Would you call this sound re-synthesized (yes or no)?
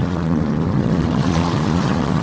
yes